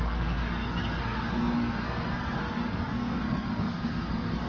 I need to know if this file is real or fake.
fake